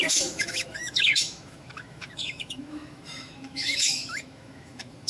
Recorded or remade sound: remade